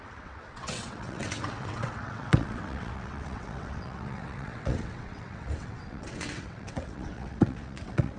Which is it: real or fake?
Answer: fake